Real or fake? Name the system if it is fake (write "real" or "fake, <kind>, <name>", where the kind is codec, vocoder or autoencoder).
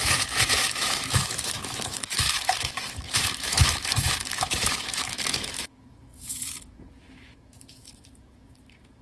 fake, autoencoder, DAC-VAE